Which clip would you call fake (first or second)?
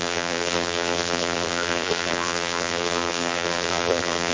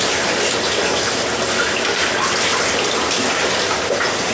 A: first